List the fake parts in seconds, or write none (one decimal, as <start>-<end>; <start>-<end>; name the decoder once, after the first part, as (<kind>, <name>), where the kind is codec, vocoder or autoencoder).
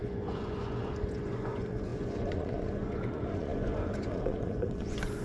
0.0-5.2 (vocoder, Vocos)